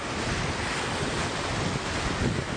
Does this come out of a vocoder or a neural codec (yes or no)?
no